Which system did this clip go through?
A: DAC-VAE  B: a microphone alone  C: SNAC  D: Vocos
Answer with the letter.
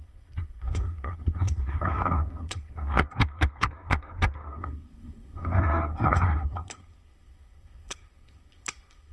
C